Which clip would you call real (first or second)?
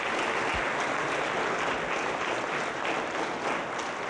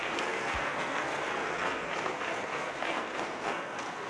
first